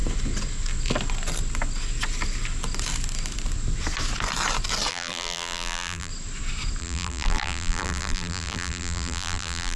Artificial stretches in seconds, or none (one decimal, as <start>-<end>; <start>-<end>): 4.9-6.1; 6.8-9.8